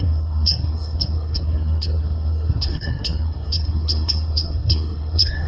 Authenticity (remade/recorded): remade